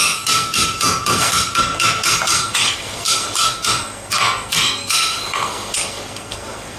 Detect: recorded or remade remade